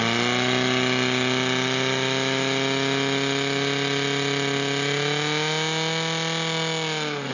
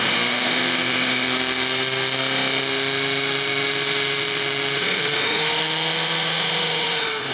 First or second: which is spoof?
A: second